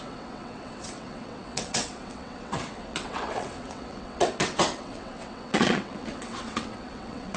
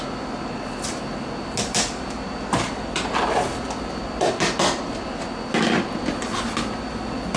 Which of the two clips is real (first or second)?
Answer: second